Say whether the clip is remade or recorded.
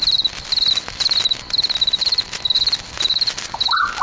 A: recorded